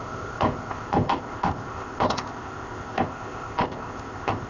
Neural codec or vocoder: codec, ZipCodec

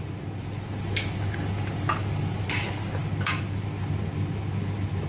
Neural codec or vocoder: none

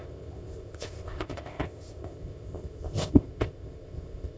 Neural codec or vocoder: codec, ZipCodec